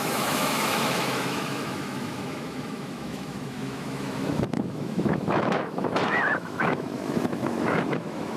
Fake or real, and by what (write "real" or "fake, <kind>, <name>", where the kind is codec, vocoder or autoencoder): fake, autoencoder, DAC-VAE